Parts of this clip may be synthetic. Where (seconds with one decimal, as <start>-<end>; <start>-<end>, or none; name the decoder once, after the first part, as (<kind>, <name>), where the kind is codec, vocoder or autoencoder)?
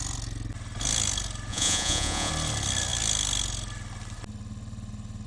1.5-2.3 (vocoder, Vocos)